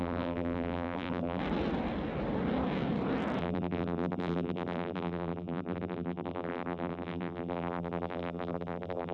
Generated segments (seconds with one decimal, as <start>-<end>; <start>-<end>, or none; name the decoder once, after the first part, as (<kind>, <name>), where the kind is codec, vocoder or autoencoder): 0.0-1.4 (vocoder, BigVGAN v2); 3.4-9.1